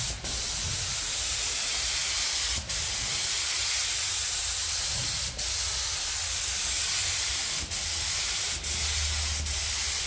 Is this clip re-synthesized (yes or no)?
no